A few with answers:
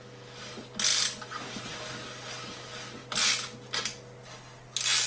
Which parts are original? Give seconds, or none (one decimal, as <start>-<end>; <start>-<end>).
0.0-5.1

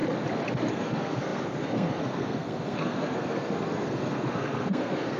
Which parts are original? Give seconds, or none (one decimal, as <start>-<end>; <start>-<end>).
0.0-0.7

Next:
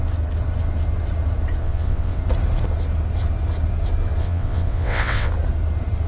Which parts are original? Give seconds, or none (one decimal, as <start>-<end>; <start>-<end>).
0.0-1.6; 2.2-4.2; 5.3-6.1